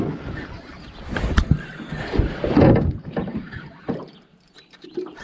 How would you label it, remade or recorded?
recorded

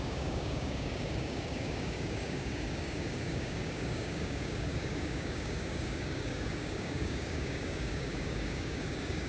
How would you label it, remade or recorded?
remade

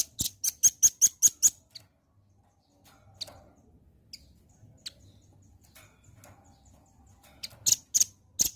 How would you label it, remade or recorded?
recorded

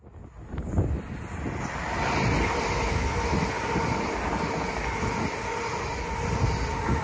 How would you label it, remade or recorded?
recorded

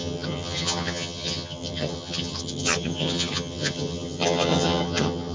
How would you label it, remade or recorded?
remade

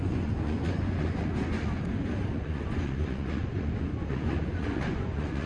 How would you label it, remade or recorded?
remade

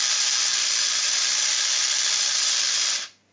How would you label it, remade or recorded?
recorded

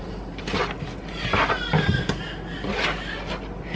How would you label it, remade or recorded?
recorded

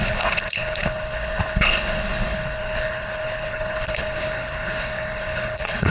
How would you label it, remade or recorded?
remade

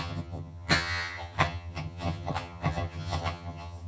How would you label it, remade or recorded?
remade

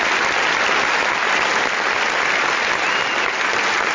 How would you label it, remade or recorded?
recorded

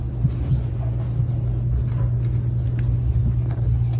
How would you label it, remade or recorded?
recorded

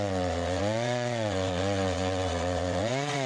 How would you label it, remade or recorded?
remade